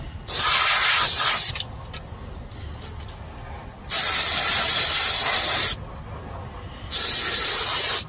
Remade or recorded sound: recorded